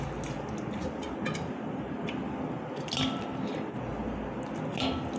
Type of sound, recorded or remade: recorded